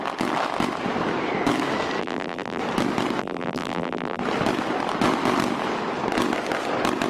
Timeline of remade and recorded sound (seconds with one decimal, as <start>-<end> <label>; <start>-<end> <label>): 0.0-2.0 recorded; 2.0-2.6 remade; 2.6-3.2 recorded; 3.2-4.2 remade; 4.2-7.1 recorded